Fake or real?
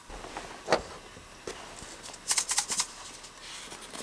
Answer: real